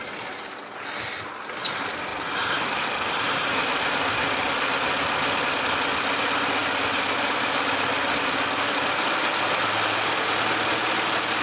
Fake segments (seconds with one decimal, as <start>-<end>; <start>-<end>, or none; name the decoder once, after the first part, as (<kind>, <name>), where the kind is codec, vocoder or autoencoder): none